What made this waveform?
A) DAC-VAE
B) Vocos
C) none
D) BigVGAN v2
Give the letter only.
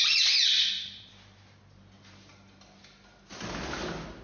C